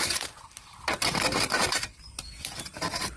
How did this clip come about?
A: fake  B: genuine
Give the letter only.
A